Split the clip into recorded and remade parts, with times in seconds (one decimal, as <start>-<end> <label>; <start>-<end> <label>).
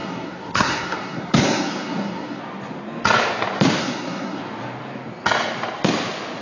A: 0.0-2.4 remade; 2.4-3.8 recorded; 3.8-4.4 remade; 4.4-6.4 recorded